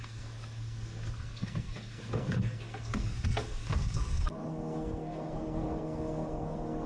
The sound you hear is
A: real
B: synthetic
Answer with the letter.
B